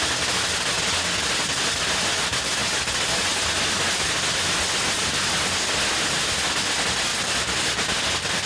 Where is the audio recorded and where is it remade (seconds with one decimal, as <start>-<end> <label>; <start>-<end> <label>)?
0.0-8.5 recorded